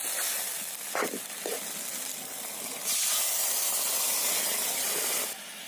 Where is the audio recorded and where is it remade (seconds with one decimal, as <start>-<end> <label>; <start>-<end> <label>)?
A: 0.0-5.7 recorded